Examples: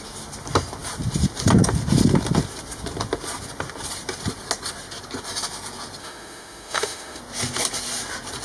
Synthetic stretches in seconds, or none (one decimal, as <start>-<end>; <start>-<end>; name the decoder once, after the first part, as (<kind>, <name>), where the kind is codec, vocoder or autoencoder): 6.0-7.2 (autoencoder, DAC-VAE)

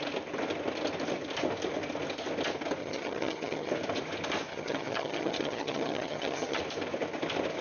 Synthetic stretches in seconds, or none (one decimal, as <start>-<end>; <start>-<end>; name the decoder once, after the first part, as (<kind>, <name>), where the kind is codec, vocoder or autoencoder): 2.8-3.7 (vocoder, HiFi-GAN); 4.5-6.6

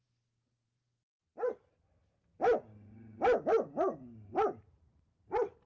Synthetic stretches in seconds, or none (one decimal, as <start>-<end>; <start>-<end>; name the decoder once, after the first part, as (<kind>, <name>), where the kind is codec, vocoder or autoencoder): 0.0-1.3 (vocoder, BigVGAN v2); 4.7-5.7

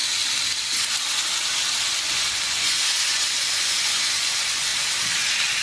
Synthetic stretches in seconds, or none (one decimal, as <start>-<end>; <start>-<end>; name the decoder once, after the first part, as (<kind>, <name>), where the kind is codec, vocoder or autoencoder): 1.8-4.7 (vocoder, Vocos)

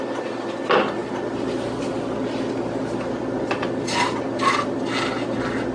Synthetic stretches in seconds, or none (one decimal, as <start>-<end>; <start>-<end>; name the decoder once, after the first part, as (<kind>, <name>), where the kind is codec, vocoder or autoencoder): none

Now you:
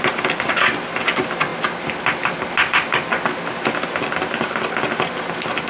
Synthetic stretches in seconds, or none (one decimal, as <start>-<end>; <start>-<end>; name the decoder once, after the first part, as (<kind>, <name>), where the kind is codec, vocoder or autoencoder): none

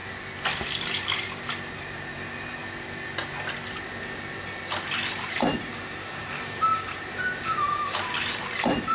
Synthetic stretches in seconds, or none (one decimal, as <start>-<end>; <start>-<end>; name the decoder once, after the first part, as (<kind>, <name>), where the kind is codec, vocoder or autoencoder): 1.7-2.6 (vocoder, BigVGAN v2); 5.3-8.9

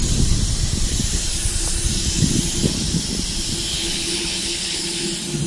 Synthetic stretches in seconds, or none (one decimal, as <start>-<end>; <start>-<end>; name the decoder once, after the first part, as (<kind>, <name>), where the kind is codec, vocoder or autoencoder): 3.7-5.0 (codec, HILCodec)